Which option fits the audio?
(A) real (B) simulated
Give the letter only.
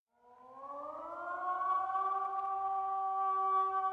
A